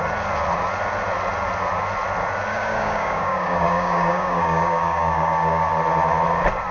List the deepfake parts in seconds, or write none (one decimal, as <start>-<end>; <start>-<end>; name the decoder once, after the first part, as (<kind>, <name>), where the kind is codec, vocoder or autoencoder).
2.5-5.7 (codec, DAC)